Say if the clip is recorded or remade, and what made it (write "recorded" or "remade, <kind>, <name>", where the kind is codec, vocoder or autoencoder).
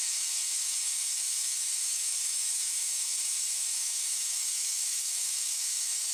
remade, autoencoder, DAC-VAE